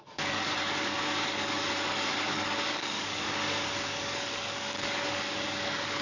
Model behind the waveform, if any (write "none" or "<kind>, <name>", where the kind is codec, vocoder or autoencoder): codec, DAC